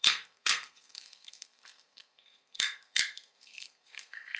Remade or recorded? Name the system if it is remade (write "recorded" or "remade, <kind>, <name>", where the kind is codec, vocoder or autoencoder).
remade, codec, SNAC